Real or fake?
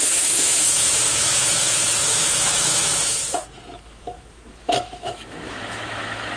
fake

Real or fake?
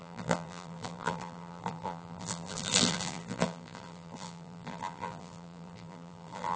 fake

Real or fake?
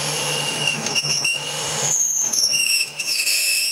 fake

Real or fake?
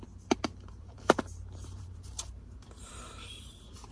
fake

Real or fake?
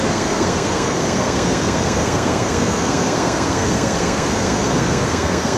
fake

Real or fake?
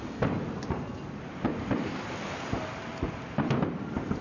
real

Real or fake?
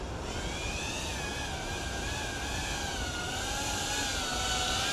real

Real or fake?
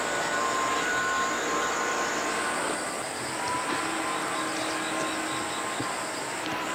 real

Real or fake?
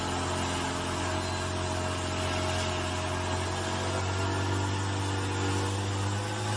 real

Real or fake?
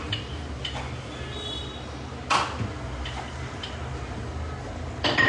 real